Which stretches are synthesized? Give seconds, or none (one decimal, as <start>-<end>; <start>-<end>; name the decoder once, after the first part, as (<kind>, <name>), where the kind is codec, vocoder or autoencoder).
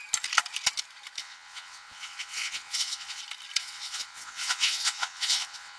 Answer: 1.2-3.2 (vocoder, WaveNeXt); 3.6-5.8